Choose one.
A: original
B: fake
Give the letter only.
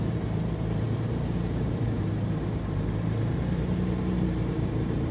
B